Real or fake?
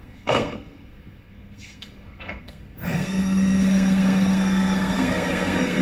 fake